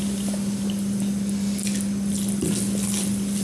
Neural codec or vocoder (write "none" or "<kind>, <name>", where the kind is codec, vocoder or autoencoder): none